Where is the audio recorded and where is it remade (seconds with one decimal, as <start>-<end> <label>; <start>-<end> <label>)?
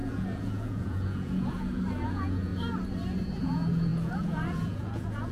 0.0-2.5 remade; 2.5-3.4 recorded; 3.4-5.3 remade